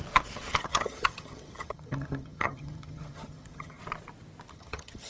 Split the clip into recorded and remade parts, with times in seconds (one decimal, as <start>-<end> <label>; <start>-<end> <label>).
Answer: 0.0-0.6 recorded; 0.6-3.8 remade; 3.8-4.5 recorded; 4.5-5.1 remade